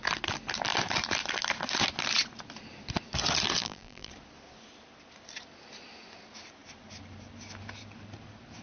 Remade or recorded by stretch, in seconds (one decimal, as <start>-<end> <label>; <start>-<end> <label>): 0.0-3.6 recorded; 3.6-4.1 remade; 4.1-8.6 recorded